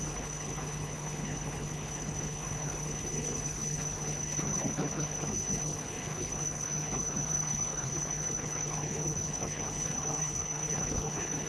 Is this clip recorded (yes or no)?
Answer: no